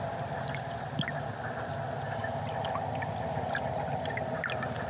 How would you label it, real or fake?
real